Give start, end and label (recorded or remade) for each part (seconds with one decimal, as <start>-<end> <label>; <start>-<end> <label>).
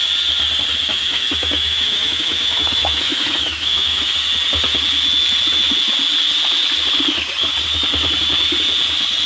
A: 0.0-0.9 recorded; 0.9-4.1 remade; 4.1-9.3 recorded